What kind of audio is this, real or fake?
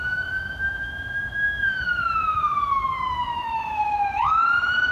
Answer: fake